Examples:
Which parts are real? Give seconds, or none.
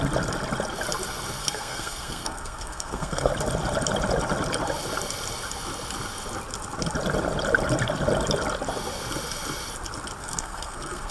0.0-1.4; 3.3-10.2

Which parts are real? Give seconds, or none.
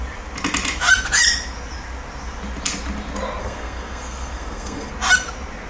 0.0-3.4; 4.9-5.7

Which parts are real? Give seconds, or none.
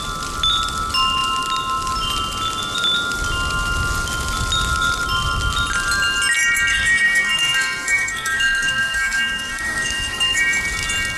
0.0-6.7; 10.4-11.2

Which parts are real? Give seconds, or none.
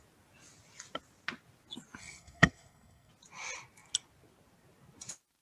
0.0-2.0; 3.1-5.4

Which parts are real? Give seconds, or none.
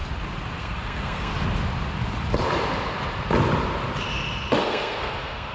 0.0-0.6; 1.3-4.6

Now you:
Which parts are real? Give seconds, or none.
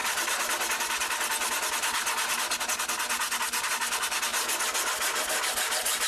0.0-6.1